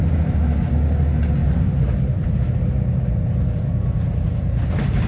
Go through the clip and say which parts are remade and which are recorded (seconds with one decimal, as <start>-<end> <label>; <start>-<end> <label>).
0.0-1.4 recorded; 1.4-4.3 remade; 4.3-5.1 recorded